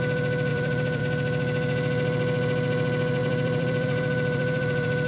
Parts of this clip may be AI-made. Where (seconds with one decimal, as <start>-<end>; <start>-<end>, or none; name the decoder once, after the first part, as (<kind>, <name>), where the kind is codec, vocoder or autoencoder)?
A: 0.5-1.0 (vocoder, BigVGAN v2); 3.2-5.1